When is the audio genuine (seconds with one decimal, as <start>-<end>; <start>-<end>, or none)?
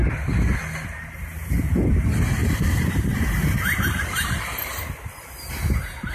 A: 0.0-2.4; 3.0-6.1